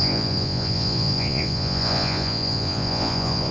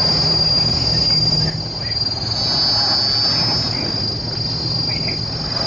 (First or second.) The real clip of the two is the second